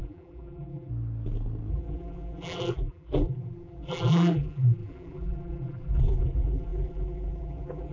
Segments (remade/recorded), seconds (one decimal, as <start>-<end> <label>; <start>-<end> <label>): 0.0-0.9 remade; 0.9-1.7 recorded; 1.7-7.9 remade